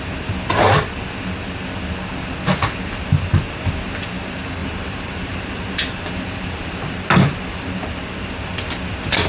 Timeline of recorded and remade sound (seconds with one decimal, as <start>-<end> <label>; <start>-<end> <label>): 0.0-4.6 recorded; 4.6-7.7 remade; 7.7-9.3 recorded